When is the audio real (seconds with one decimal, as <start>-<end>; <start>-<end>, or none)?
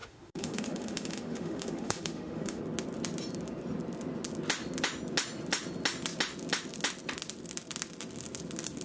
2.6-8.8